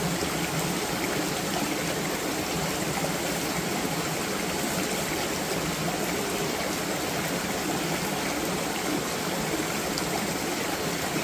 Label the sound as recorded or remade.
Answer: recorded